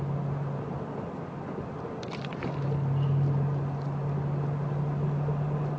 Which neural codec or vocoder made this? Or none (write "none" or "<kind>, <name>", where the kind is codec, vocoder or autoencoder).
none